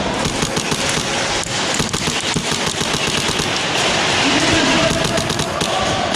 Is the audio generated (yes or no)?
no